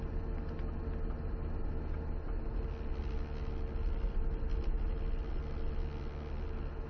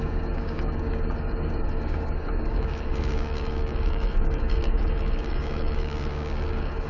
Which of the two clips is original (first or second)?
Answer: first